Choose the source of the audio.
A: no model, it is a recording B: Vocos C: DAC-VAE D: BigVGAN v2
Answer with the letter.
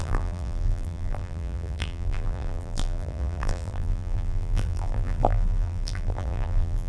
D